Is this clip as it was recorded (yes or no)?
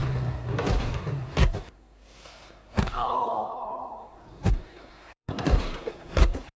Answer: no